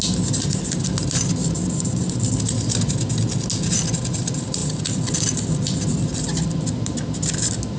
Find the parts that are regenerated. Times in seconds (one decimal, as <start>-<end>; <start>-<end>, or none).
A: 1.4-2.1